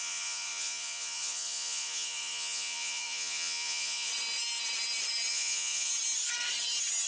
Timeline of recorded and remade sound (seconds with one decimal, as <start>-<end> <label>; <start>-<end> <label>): 0.0-4.1 remade; 4.1-5.3 recorded; 5.3-5.9 remade; 5.9-7.1 recorded